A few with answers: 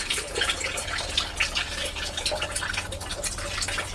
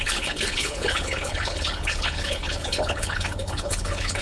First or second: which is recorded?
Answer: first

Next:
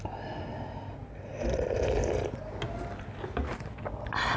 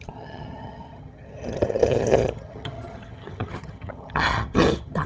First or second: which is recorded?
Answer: first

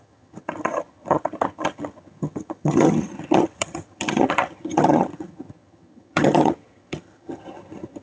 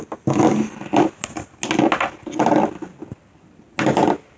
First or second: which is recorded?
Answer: second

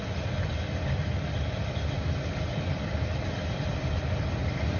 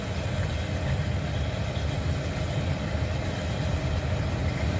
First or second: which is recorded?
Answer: second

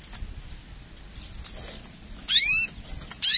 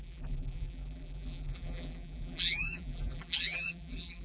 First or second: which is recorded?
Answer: first